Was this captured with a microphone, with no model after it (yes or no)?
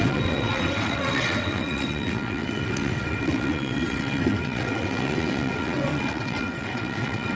no